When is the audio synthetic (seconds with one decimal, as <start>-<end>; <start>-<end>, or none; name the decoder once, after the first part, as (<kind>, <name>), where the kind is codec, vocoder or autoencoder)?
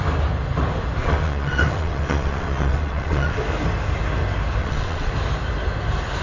1.0-3.4 (vocoder, WaveNeXt); 4.6-5.1